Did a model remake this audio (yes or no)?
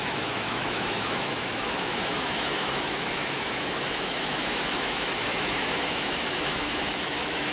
yes